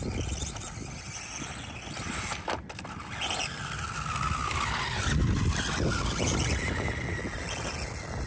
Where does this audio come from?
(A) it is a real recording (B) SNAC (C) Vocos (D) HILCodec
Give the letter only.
A